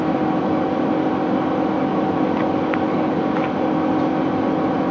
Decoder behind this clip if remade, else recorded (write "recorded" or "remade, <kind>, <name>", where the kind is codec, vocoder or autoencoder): recorded